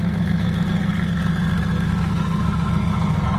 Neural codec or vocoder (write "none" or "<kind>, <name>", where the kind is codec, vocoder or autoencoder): codec, SNAC